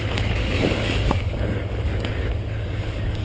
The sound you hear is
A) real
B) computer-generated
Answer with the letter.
B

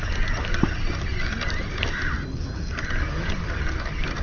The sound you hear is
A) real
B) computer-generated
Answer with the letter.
A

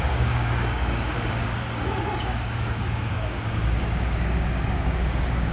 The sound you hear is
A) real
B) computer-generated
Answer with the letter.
B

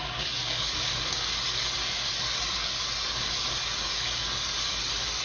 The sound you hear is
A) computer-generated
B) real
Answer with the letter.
A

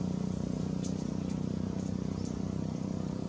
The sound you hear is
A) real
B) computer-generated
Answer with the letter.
A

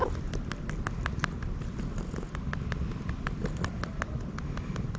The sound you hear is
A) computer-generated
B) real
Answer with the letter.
B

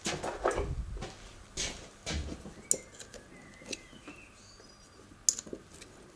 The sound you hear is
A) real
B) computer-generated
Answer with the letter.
A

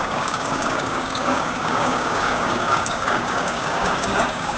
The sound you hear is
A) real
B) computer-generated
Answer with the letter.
B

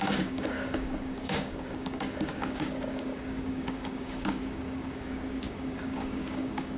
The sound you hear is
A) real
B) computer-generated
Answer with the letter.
B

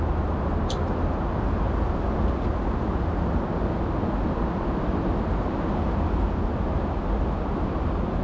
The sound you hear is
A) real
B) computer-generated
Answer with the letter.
A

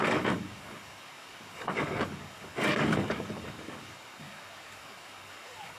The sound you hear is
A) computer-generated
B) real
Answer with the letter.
A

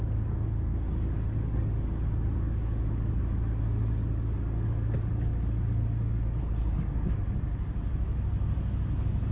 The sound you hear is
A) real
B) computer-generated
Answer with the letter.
B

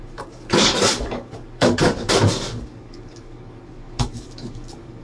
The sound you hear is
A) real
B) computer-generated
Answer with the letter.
B